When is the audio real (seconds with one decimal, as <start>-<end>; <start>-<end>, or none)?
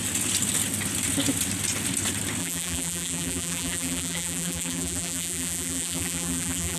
0.0-2.4